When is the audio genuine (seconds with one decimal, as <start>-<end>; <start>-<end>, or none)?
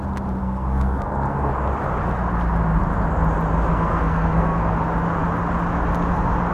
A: 0.0-0.4; 1.5-3.7; 4.8-6.5